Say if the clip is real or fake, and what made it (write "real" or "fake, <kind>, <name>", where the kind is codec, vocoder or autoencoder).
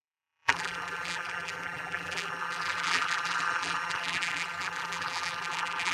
fake, vocoder, BigVGAN v2